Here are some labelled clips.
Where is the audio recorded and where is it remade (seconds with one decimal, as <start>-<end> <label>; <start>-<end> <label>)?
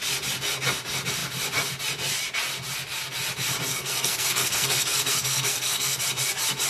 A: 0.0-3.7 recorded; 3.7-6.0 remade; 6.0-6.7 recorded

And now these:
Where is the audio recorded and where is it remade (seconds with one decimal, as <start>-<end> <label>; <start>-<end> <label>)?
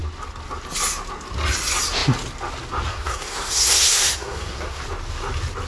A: 0.0-2.9 recorded; 2.9-4.8 remade; 4.8-5.7 recorded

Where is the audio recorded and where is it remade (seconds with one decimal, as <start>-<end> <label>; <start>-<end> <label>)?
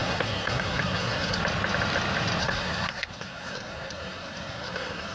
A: 0.0-1.4 remade; 1.4-2.4 recorded; 2.4-5.1 remade